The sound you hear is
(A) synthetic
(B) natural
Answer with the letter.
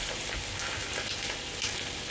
B